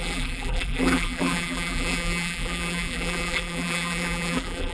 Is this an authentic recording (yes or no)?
no